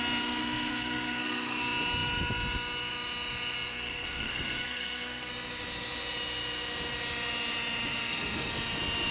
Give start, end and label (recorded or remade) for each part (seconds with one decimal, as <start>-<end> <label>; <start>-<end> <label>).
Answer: 0.0-0.4 recorded; 0.4-1.6 remade; 1.6-3.7 recorded; 3.7-5.3 remade; 5.3-8.0 recorded; 8.0-8.5 remade; 8.5-9.1 recorded

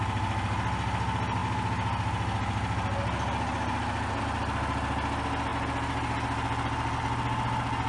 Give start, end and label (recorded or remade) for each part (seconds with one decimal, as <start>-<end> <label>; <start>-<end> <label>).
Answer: 0.0-7.9 recorded